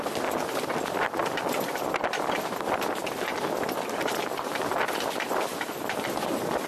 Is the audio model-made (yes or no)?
no